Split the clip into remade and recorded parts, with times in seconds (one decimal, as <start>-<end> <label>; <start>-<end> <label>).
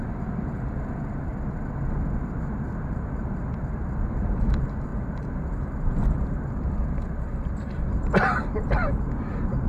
0.0-1.3 remade; 1.3-2.4 recorded; 2.4-9.7 remade